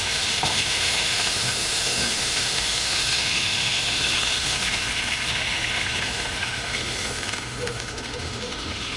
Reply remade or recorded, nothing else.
remade